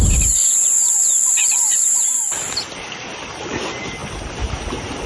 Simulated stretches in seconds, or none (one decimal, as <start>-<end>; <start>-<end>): none